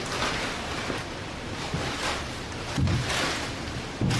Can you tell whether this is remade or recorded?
remade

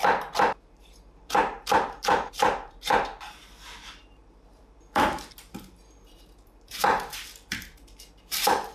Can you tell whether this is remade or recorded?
remade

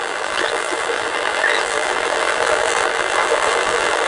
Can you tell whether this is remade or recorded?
remade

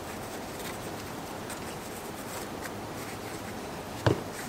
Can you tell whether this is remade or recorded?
recorded